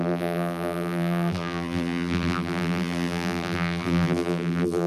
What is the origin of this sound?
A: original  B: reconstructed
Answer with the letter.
B